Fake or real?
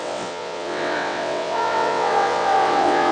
fake